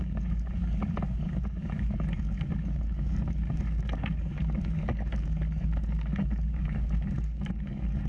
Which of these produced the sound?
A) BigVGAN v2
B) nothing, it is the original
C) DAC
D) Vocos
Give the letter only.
C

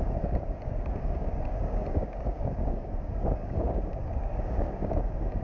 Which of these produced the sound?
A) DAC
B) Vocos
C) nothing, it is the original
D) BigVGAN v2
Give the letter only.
A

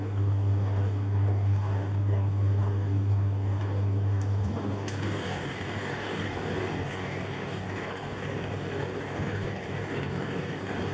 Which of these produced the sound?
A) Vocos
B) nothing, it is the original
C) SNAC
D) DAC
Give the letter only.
D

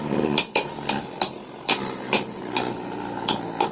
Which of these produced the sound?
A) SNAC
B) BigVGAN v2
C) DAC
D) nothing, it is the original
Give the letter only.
D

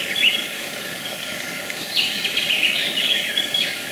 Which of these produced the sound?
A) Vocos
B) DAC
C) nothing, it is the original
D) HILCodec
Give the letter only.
B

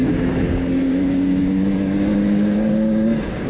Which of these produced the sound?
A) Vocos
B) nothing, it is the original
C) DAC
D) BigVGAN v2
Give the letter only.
C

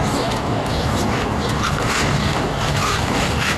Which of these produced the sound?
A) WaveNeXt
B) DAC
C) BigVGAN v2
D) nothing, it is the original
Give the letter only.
B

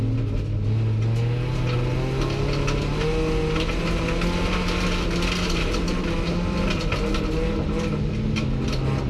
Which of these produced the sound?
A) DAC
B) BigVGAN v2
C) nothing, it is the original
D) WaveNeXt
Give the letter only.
C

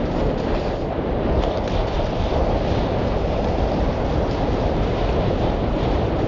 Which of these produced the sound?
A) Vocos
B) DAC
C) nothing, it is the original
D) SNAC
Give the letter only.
C